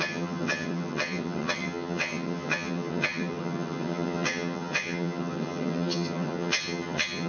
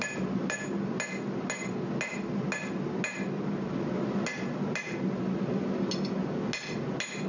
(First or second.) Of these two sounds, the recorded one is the second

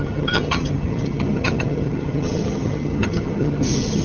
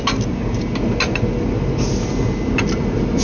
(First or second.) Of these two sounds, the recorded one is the second